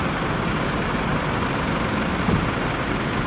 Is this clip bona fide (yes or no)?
yes